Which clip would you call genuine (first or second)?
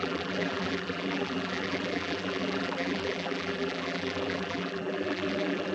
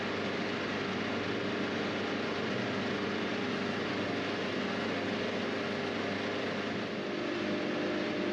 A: second